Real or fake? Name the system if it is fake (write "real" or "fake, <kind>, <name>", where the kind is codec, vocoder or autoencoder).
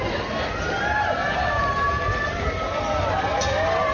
real